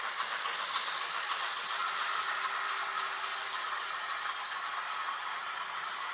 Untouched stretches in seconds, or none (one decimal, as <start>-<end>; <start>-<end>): 0.0-6.1